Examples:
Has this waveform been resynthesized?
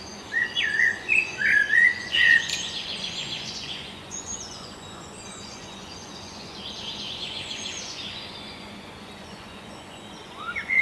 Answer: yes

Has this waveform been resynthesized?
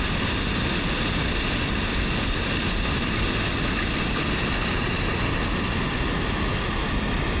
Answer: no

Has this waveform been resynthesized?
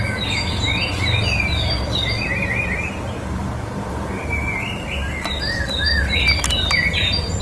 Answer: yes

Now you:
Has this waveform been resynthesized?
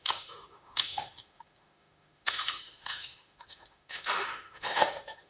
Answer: yes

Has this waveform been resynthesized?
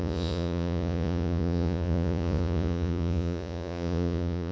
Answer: yes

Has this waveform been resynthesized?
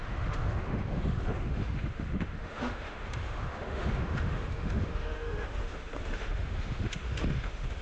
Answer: yes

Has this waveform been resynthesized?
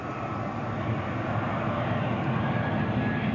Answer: no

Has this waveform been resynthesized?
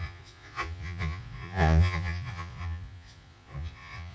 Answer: yes